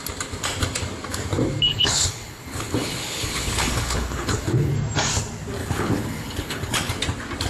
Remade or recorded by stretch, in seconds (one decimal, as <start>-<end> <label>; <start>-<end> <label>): 0.0-1.7 recorded; 1.7-4.7 remade; 4.7-5.6 recorded; 5.6-6.9 remade; 6.9-7.5 recorded